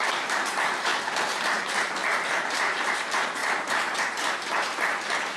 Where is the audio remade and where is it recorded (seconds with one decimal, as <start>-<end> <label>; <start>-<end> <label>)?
0.0-3.4 remade; 3.4-4.0 recorded; 4.0-5.4 remade